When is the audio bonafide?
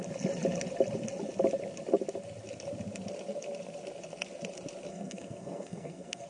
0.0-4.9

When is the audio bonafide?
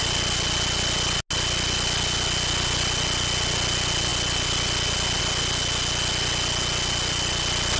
0.0-7.8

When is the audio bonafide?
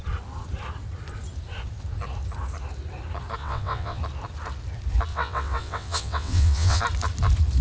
0.0-3.4; 4.0-5.1; 6.8-7.6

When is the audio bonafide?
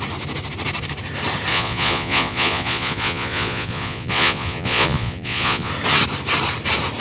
0.0-1.5; 5.7-7.0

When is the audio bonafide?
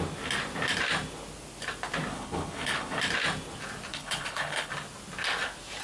0.0-2.1; 3.0-3.9; 4.7-5.8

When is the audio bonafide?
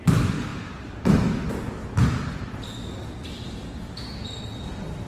0.0-5.1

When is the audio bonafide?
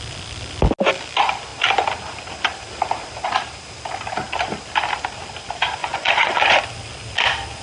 0.0-5.8; 6.6-7.6